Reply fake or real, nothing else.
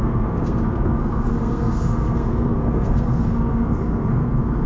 fake